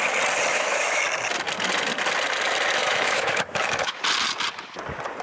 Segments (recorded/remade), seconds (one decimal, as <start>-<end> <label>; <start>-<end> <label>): 0.0-0.5 recorded; 0.5-1.0 remade; 1.0-2.8 recorded; 2.8-4.0 remade; 4.0-5.2 recorded